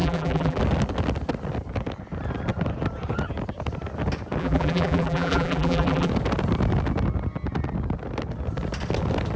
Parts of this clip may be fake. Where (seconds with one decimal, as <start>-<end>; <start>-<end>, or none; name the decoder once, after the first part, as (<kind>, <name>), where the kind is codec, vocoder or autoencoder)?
0.0-0.6 (vocoder, BigVGAN v2); 4.4-6.1